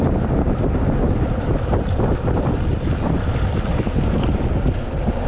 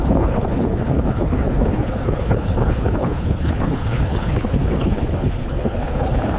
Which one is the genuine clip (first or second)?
first